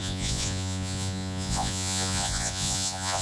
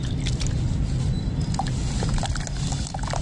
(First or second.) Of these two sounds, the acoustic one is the second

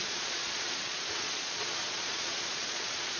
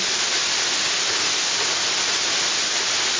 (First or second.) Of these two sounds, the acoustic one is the second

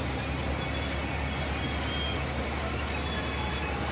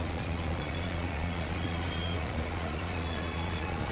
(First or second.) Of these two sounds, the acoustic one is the first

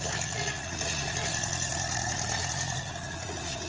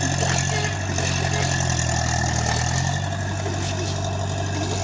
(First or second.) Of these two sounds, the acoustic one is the second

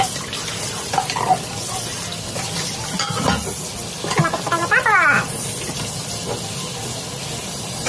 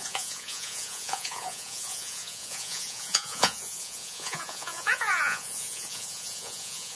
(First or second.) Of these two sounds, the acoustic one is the first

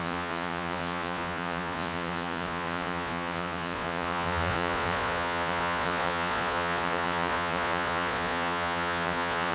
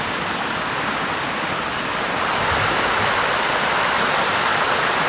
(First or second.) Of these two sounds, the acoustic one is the second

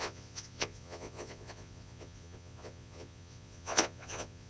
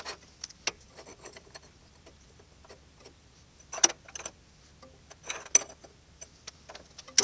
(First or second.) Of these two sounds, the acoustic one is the second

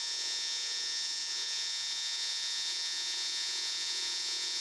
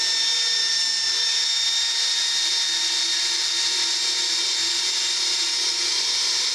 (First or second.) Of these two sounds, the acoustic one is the second